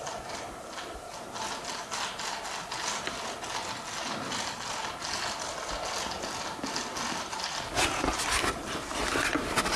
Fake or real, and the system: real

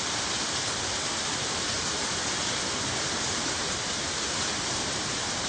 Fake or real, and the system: fake, vocoder, BigVGAN v2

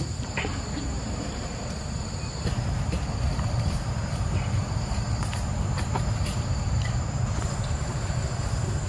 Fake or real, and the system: fake, vocoder, BigVGAN v2